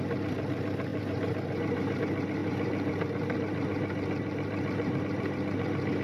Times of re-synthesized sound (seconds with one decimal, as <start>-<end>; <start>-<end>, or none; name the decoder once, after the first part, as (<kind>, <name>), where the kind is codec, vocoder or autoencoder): 0.9-2.0 (vocoder, BigVGAN v2); 2.4-5.0